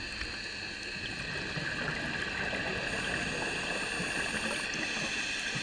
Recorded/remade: recorded